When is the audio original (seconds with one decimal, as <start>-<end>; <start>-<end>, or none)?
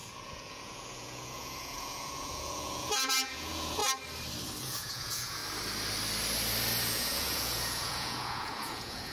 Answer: 3.8-4.6; 5.4-6.9